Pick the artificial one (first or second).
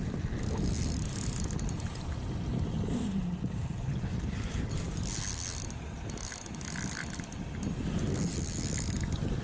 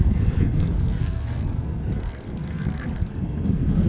second